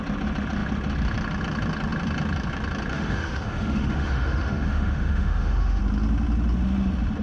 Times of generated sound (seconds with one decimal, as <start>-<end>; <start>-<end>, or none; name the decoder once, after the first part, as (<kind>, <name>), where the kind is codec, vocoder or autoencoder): 2.9-5.8 (autoencoder, DAC-VAE)

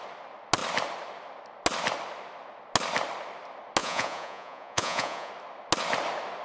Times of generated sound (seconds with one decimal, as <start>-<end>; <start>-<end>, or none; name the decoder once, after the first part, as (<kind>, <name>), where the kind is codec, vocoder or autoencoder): 3.8-5.3 (vocoder, Vocos)

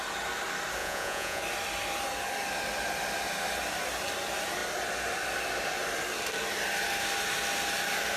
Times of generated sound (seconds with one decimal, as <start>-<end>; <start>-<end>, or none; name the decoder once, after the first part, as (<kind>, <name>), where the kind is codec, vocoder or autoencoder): 0.8-1.4 (vocoder, Vocos)

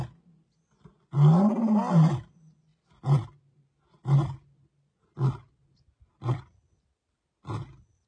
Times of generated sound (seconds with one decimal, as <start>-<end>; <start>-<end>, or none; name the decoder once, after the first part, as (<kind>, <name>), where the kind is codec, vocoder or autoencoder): none

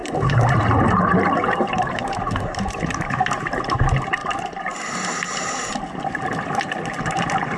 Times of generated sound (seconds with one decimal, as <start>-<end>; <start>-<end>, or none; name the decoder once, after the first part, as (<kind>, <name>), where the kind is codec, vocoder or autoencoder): 0.0-4.2 (vocoder, BigVGAN v2); 6.6-7.6

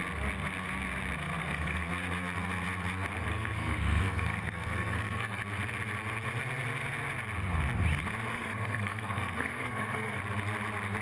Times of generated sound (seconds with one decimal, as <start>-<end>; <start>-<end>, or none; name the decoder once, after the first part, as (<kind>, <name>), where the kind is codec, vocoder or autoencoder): 1.4-1.9 (codec, SNAC); 3.3-5.4; 8.3-10.2

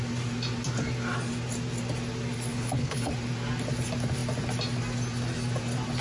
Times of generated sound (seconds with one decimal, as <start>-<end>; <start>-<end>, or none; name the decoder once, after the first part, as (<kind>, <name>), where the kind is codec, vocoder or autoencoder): 2.5-3.1 (codec, HILCodec)

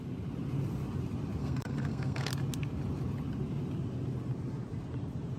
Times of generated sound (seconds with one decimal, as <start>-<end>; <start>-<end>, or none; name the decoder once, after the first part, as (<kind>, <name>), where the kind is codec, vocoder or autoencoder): 1.4-2.3 (codec, SNAC)